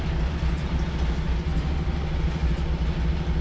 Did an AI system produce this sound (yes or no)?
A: no